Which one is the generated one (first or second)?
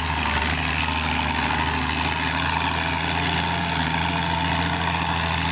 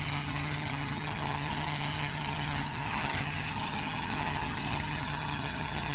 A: second